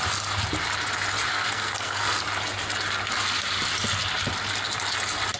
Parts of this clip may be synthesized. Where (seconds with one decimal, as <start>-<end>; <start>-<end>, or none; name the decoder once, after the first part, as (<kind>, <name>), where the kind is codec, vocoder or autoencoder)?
1.3-2.2 (codec, SNAC)